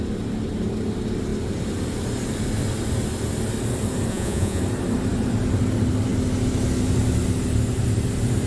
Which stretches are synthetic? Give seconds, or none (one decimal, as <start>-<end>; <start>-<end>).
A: 4.1-4.6